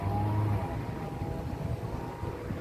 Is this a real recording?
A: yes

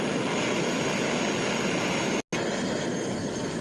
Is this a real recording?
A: yes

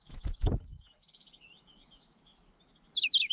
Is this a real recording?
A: no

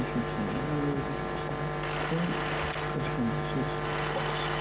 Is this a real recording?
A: yes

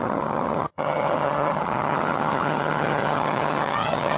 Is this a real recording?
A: no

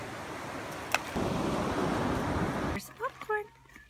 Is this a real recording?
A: yes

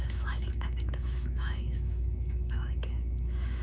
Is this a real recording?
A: no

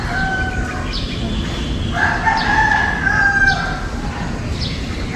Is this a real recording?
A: yes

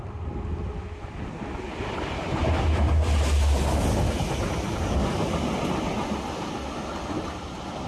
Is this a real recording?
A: yes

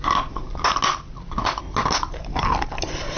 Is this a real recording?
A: yes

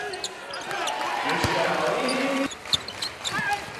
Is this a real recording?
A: no